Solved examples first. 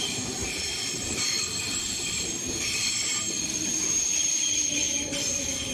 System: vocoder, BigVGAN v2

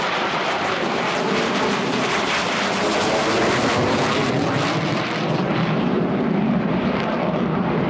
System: vocoder, BigVGAN v2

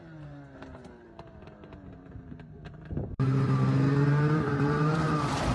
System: vocoder, BigVGAN v2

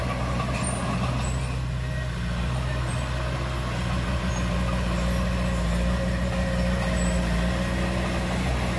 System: none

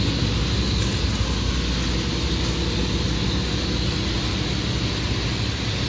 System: none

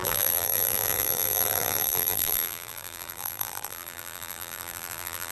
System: vocoder, BigVGAN v2